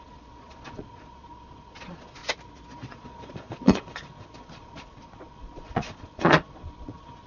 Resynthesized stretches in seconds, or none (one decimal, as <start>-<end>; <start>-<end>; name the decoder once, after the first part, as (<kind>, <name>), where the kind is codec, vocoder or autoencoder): 0.0-2.2 (vocoder, Vocos); 2.9-7.3